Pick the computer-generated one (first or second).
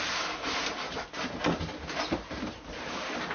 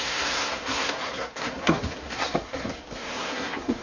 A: second